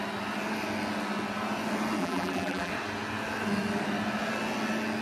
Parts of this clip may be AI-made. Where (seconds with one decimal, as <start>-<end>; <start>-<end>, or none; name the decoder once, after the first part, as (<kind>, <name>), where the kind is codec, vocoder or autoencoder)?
2.0-2.7 (vocoder, BigVGAN v2)